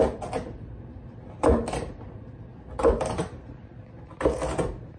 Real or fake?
real